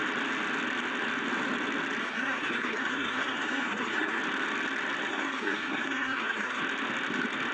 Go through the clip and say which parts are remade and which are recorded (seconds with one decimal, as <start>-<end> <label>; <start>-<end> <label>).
0.0-2.0 recorded; 2.0-4.2 remade; 4.2-5.1 recorded; 5.1-6.6 remade; 6.6-7.5 recorded